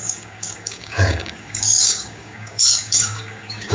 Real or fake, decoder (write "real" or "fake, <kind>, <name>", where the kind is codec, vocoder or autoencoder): fake, codec, DAC